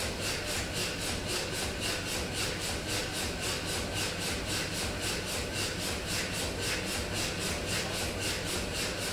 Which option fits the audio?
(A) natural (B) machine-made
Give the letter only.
A